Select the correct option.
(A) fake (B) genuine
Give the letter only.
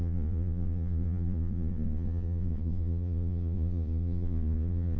A